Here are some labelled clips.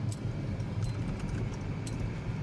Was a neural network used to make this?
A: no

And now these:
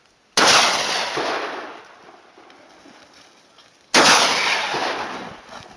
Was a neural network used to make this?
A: no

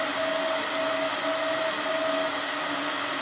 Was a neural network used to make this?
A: no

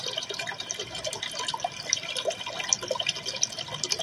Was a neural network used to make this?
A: no